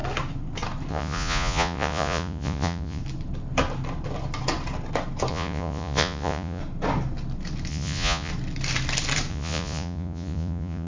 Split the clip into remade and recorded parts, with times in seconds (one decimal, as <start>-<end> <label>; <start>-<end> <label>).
0.0-0.9 recorded; 0.9-3.0 remade; 3.0-5.3 recorded; 5.3-6.6 remade; 6.6-7.7 recorded; 7.7-8.3 remade; 8.3-9.3 recorded; 9.3-10.9 remade